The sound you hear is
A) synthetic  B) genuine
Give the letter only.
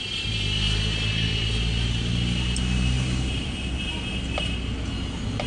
B